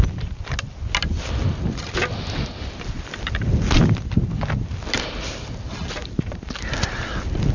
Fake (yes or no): no